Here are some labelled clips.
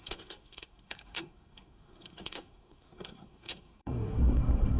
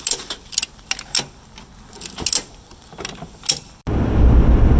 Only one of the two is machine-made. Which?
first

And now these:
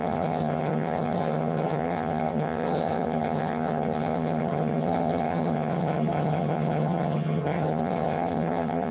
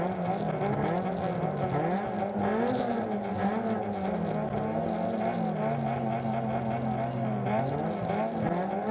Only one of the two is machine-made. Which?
first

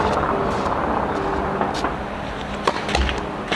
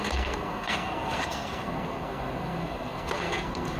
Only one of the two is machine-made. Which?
second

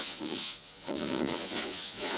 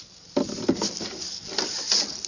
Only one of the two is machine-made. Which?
first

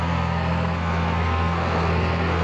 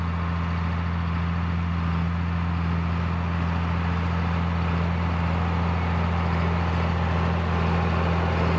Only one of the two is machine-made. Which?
first